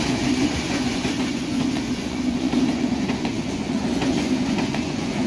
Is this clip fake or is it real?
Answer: fake